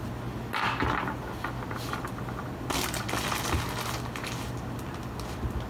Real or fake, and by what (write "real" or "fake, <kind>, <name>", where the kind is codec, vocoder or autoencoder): real